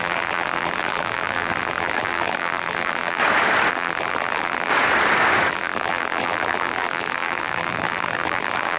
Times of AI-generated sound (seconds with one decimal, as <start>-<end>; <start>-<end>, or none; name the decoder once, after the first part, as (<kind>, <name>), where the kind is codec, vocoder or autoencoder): 0.0-3.2 (vocoder, BigVGAN v2); 3.7-4.7; 5.5-8.8